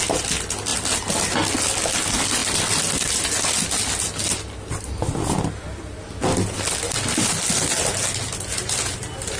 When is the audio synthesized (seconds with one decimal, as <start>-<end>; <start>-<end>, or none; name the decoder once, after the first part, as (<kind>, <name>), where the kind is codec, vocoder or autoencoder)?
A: none